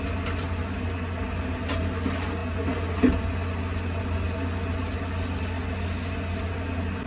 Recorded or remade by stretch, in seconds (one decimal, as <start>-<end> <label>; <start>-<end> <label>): 0.0-7.1 recorded